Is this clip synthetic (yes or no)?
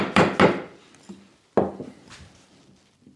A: no